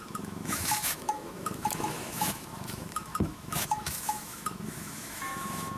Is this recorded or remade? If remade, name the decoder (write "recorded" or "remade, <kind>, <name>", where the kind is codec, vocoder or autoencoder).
remade, autoencoder, DAC-VAE